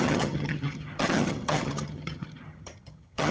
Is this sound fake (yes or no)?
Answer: yes